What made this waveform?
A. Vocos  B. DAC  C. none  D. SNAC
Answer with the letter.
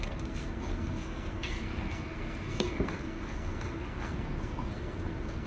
D